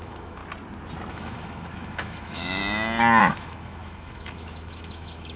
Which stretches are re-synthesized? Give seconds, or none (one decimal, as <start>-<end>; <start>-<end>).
0.0-0.4; 1.1-2.6; 3.2-5.4